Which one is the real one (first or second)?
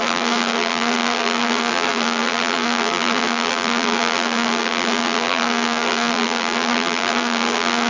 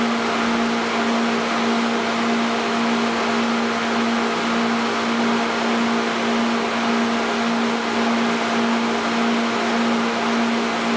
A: second